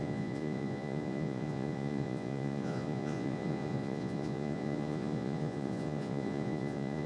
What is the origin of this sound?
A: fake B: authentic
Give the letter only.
A